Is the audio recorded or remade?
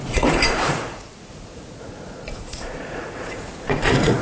remade